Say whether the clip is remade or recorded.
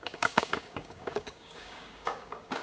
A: remade